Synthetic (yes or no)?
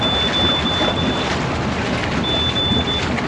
no